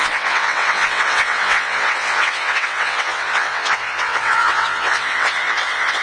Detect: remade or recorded remade